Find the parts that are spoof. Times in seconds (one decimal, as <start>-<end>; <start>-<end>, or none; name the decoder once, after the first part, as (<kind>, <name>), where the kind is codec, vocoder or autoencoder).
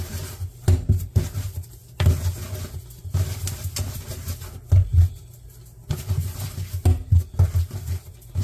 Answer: none